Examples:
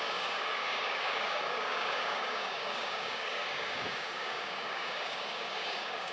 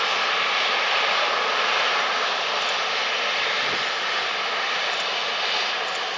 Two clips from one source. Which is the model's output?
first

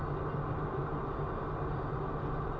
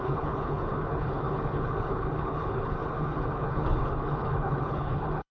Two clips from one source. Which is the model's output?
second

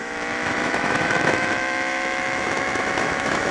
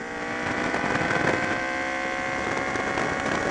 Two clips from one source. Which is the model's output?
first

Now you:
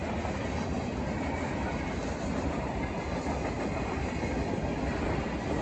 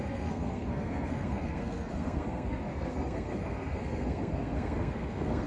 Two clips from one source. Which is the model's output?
second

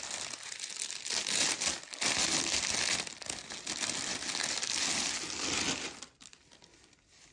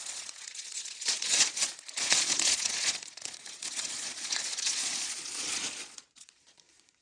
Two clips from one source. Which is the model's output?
second